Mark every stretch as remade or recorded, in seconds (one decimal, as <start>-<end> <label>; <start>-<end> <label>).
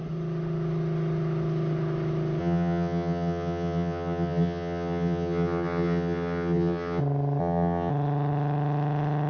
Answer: 0.0-2.4 recorded; 2.4-7.0 remade; 7.0-7.4 recorded; 7.4-7.9 remade; 7.9-9.3 recorded